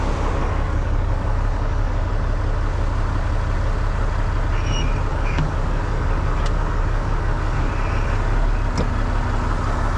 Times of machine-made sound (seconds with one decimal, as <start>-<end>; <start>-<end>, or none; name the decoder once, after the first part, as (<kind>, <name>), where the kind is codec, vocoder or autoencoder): 0.4-2.1 (codec, DAC); 5.1-7.7